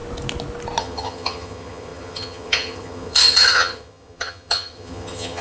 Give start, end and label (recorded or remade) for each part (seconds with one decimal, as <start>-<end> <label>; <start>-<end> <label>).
0.0-0.8 recorded; 0.8-5.4 remade